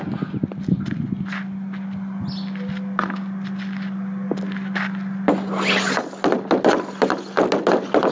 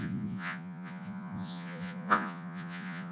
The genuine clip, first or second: first